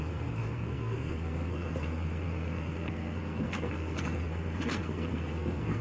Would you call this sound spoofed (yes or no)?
yes